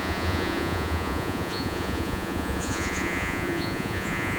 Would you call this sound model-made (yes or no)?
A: yes